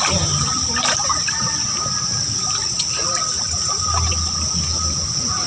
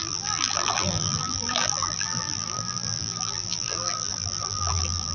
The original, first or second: first